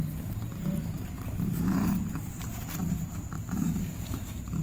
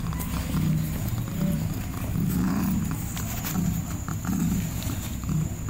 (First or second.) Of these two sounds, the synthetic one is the first